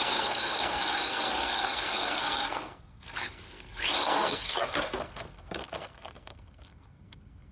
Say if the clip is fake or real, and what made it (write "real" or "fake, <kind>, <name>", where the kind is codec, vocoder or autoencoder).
fake, codec, SNAC